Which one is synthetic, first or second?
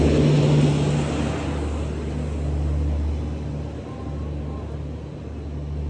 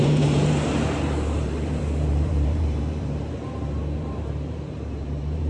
second